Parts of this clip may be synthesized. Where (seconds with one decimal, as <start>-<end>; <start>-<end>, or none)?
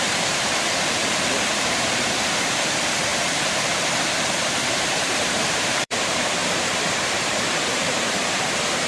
0.0-1.0; 1.5-8.9